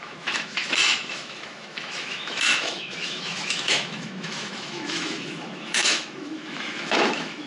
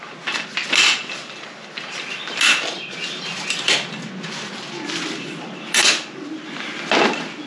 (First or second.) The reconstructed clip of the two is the first